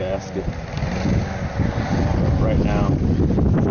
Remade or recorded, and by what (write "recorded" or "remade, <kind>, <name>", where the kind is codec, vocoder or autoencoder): recorded